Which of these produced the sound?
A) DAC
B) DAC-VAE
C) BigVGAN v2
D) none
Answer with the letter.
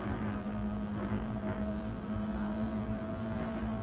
C